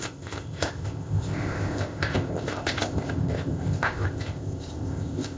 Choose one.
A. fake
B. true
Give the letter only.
A